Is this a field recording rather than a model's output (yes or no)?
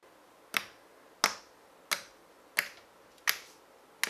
yes